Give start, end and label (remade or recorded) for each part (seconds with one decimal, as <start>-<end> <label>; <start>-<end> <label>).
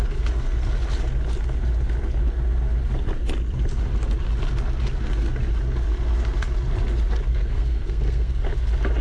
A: 0.0-7.3 recorded; 7.3-8.4 remade; 8.4-9.0 recorded